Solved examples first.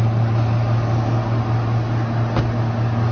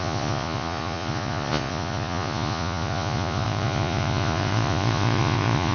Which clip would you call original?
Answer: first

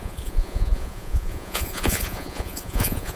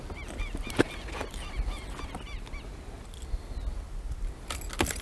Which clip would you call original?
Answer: second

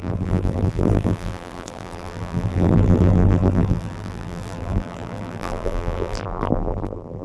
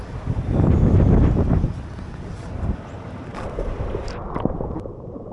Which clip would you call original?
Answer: second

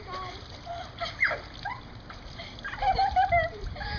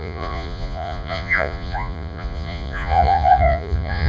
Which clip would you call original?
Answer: first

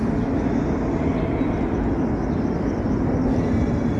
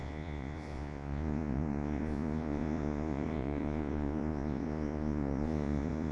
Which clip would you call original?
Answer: first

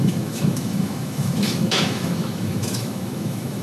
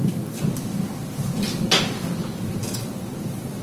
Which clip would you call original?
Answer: second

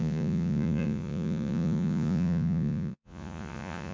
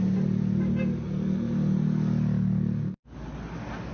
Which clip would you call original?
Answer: second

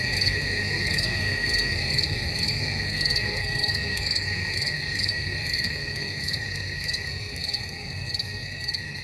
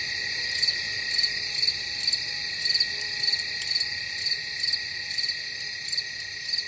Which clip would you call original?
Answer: second